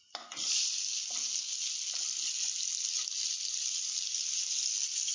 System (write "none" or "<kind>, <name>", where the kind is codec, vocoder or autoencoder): none